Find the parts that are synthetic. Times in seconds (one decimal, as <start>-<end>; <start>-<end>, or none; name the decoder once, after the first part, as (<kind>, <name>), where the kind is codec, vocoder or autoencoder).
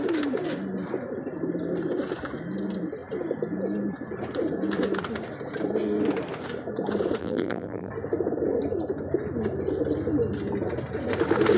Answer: 7.2-7.9 (vocoder, BigVGAN v2)